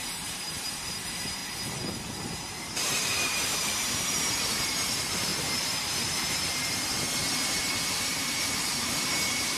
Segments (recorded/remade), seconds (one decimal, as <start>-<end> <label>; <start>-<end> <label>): 0.0-1.4 remade; 1.4-2.5 recorded; 2.5-5.3 remade; 5.3-7.9 recorded; 7.9-9.6 remade